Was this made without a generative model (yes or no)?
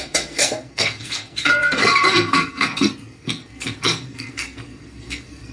no